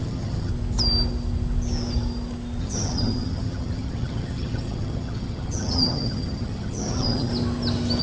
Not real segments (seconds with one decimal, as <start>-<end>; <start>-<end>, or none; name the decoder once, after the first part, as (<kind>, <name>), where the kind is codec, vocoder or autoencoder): 0.0-0.5 (vocoder, HiFi-GAN); 2.6-7.3

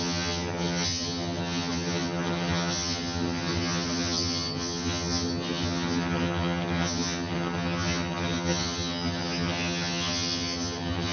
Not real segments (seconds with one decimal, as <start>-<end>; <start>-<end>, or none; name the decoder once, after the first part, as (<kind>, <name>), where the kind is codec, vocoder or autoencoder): 0.0-11.1 (vocoder, HiFi-GAN)

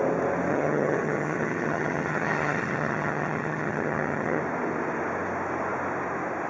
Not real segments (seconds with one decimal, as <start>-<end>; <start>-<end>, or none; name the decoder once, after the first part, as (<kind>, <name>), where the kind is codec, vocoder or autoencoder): 0.5-4.4 (vocoder, HiFi-GAN)